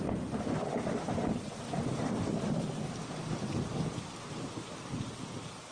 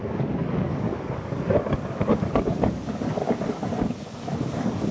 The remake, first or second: second